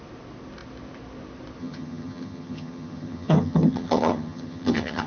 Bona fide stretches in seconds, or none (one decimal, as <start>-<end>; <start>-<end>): 0.0-1.6